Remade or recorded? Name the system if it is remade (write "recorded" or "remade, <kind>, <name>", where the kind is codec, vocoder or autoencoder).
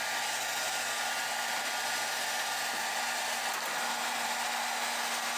recorded